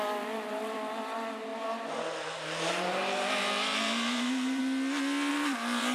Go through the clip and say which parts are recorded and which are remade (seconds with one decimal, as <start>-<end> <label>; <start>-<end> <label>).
0.0-1.5 remade; 1.5-2.7 recorded; 2.7-4.6 remade; 4.6-5.3 recorded; 5.3-5.9 remade